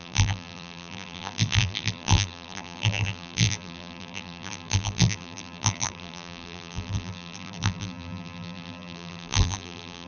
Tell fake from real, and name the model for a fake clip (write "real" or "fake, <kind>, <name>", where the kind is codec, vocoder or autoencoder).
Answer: fake, vocoder, BigVGAN v2